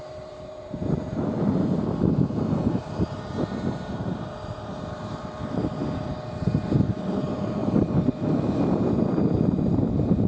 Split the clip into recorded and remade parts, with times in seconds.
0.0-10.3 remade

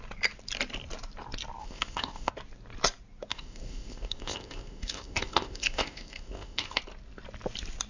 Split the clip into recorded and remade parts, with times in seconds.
0.0-1.6 recorded; 1.6-2.3 remade; 2.3-3.3 recorded; 3.3-6.8 remade; 6.8-7.9 recorded

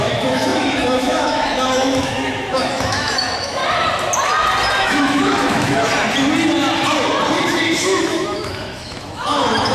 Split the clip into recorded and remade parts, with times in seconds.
0.0-3.6 remade; 3.6-4.8 recorded; 4.8-5.9 remade; 5.9-7.8 recorded; 7.8-9.7 remade